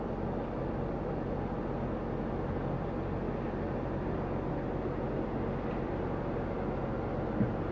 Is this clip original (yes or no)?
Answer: yes